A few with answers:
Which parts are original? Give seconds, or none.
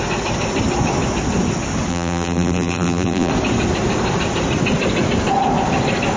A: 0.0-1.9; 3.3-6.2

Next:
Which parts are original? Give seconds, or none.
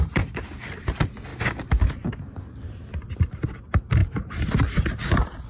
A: 0.0-5.5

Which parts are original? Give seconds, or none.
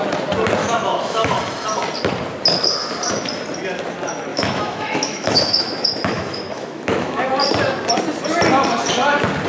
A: 0.0-0.6; 1.4-4.3; 7.3-9.5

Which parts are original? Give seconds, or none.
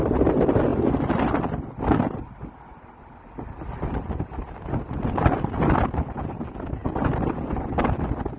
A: 0.0-8.4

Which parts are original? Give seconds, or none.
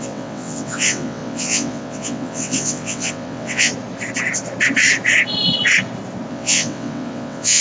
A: 3.7-6.3